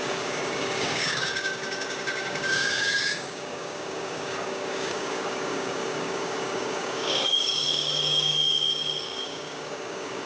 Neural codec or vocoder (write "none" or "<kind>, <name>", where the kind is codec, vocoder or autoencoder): codec, DAC